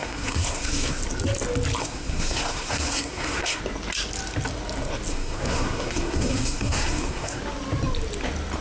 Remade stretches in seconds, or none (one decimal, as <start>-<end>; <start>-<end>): 0.0-1.0; 1.8-3.6; 5.1-7.4